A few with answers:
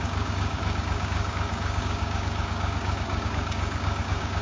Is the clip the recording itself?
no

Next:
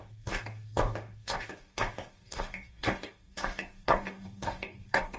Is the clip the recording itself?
no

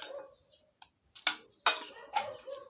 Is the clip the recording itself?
yes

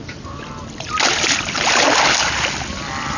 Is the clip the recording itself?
yes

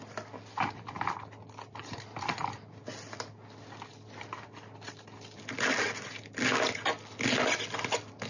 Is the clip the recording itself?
yes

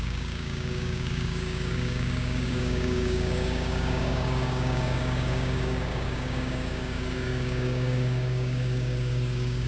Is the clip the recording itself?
no